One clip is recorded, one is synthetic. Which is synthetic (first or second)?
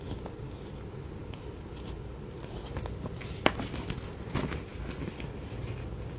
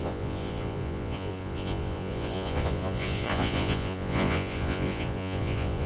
second